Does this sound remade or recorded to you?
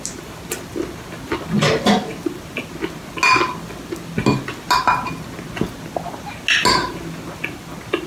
recorded